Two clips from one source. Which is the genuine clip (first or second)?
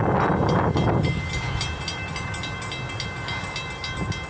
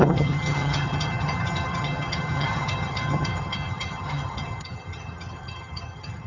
first